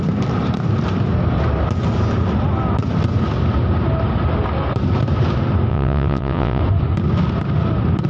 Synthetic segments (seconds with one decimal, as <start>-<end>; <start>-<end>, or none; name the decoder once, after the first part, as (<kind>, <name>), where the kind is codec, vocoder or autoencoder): 5.7-6.6 (vocoder, WaveNeXt)